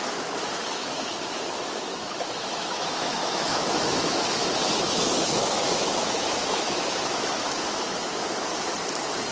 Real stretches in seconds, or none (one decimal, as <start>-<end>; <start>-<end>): 8.7-9.3